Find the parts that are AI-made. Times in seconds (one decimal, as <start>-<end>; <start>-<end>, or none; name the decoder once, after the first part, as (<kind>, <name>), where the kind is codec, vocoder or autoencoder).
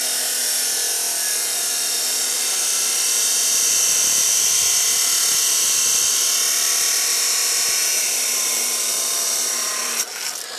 0.4-0.9 (vocoder, BigVGAN v2); 7.8-10.0